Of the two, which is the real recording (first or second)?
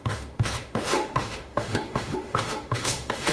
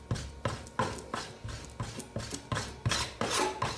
second